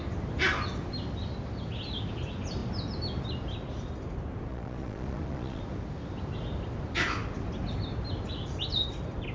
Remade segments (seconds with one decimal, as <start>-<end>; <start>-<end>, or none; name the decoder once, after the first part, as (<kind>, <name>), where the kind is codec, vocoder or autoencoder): 4.5-5.6 (vocoder, Vocos)